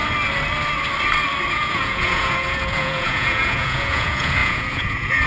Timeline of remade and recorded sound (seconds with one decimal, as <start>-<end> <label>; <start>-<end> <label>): 0.0-1.5 recorded; 1.5-5.3 remade